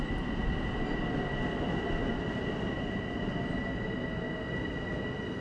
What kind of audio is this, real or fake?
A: real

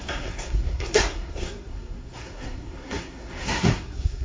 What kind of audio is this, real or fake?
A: fake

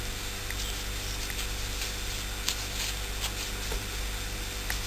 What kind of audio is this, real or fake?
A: real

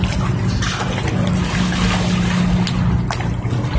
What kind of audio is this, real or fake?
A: real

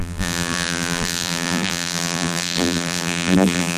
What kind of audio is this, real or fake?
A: fake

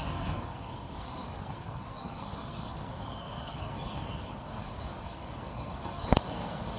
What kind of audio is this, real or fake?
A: fake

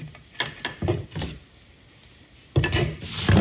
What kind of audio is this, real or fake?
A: real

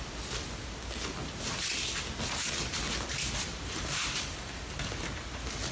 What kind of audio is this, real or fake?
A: real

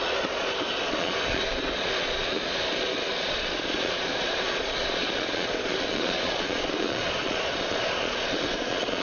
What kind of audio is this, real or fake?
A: fake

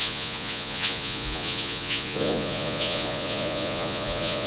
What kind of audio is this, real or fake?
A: fake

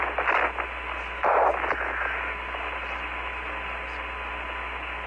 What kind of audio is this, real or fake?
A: real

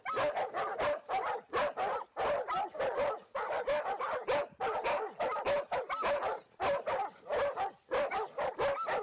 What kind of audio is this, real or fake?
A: real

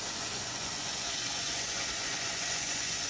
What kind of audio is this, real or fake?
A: fake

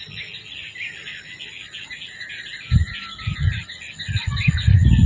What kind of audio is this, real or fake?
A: real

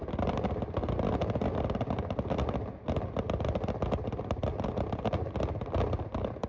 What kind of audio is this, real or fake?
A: real